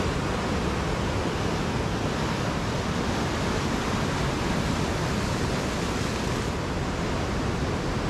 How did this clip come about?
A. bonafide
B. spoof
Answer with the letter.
A